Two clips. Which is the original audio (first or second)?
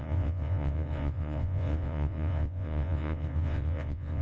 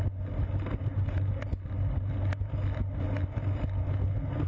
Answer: second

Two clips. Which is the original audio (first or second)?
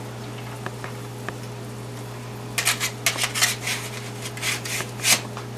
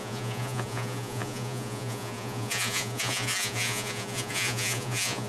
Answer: first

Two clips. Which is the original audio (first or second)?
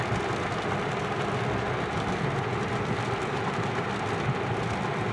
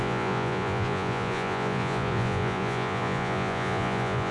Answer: first